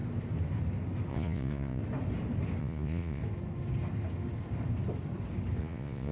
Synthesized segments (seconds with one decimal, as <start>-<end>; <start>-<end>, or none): 1.1-1.8; 2.6-3.2; 5.6-6.1